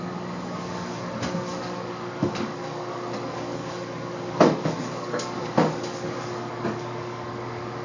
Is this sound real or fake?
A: fake